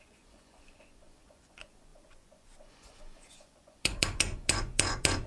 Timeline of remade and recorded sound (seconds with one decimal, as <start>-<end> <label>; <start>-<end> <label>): 0.0-5.3 remade